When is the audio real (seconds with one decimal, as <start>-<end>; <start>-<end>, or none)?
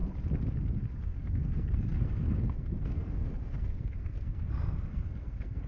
0.0-1.0